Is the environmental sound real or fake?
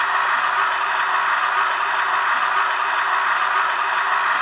real